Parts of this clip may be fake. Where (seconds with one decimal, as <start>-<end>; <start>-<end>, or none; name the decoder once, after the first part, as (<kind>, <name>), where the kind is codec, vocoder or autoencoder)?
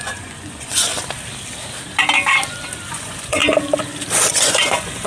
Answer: 0.0-0.9 (vocoder, Vocos); 2.9-3.4; 4.3-5.1